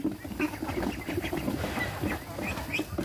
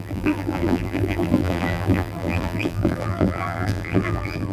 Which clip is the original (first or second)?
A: first